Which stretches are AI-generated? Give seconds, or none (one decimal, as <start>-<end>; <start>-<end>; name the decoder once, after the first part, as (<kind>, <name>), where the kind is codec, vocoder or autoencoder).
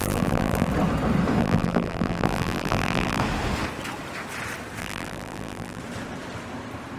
0.0-0.7 (vocoder, BigVGAN v2); 1.4-3.2; 4.8-5.8